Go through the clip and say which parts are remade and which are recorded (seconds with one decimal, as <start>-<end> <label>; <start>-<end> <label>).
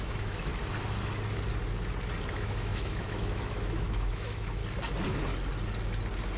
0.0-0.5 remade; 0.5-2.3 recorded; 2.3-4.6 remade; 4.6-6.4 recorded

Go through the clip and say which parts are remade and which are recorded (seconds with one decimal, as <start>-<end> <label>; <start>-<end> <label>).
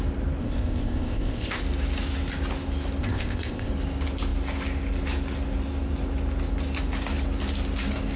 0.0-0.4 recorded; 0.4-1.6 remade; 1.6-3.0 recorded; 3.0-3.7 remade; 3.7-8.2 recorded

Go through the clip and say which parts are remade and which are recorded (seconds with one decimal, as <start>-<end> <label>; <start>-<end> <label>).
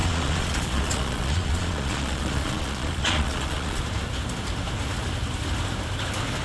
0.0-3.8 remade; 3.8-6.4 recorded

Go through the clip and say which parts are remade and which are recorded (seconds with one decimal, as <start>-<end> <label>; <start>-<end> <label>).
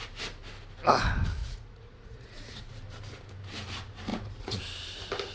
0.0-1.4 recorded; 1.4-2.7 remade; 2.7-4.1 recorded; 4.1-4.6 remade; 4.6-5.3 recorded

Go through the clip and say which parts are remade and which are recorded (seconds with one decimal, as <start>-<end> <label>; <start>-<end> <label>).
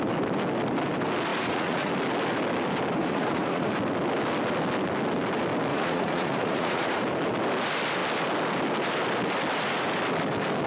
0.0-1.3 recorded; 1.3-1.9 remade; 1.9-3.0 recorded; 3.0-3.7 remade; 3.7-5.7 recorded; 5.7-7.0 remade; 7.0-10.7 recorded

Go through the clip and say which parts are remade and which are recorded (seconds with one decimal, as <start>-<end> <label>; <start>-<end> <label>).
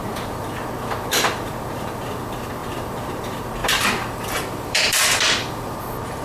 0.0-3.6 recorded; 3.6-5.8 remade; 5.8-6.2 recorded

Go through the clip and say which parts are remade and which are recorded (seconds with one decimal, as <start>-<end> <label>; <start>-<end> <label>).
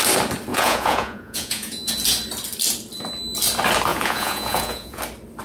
0.0-0.5 recorded; 0.5-1.9 remade; 1.9-3.9 recorded; 3.9-5.0 remade; 5.0-5.4 recorded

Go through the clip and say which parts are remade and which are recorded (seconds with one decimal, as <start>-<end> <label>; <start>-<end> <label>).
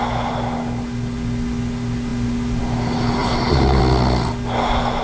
0.0-3.2 recorded; 3.2-3.8 remade; 3.8-5.0 recorded